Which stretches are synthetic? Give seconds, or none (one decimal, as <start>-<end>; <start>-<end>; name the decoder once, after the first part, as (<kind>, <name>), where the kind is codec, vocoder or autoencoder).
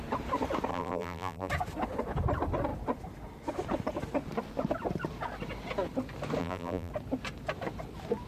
0.7-1.5 (vocoder, BigVGAN v2); 6.4-6.9